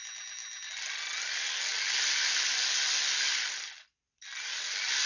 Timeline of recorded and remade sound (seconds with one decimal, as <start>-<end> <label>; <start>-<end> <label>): 0.0-5.1 recorded